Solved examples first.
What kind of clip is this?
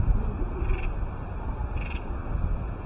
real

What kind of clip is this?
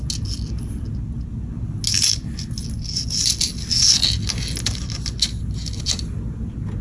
real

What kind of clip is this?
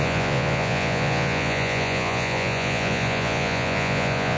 fake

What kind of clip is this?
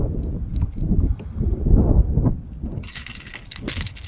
real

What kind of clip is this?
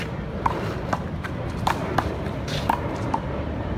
fake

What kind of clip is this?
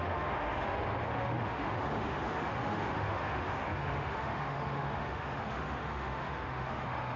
fake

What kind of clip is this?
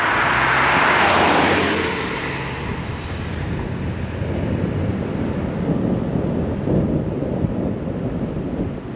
real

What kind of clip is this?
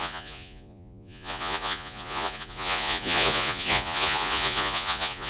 fake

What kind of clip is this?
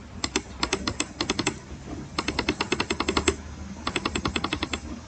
real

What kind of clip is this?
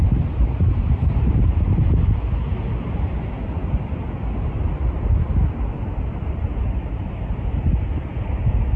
real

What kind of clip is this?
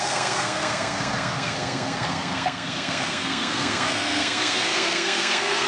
fake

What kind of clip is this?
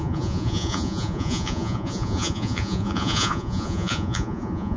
fake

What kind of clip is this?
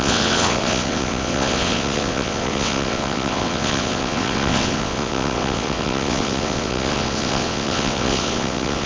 fake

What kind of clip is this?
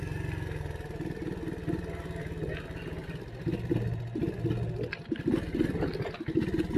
real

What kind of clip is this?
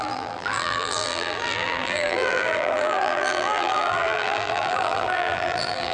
fake